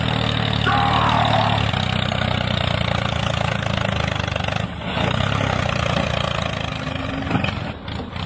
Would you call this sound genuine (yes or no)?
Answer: yes